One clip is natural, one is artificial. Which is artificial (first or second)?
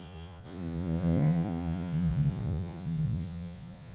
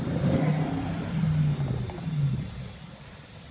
first